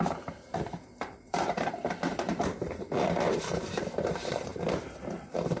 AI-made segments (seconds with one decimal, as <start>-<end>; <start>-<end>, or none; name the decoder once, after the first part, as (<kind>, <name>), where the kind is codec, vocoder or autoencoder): 0.0-4.5 (vocoder, BigVGAN v2); 5.1-5.6